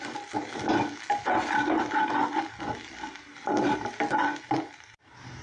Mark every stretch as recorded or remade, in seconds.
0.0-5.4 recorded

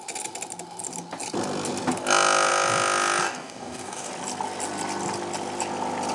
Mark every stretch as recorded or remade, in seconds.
0.0-3.2 recorded; 3.2-4.1 remade; 4.1-6.1 recorded

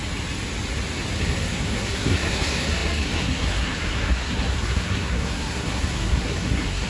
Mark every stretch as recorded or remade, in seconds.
0.0-1.2 recorded; 1.2-6.9 remade

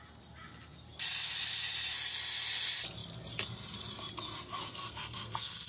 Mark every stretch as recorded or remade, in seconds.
0.0-4.7 recorded; 4.7-5.7 remade